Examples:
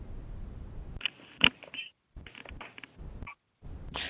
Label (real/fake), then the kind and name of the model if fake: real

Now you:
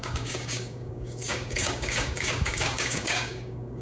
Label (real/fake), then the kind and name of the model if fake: fake, codec, DAC